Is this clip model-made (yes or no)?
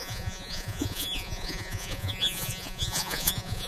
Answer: yes